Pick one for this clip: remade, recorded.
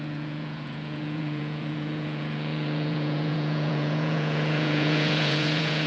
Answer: remade